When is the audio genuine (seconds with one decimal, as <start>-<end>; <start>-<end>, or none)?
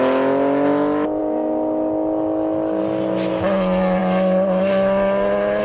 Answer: 0.0-5.6